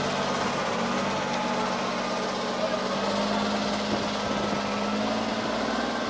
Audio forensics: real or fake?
real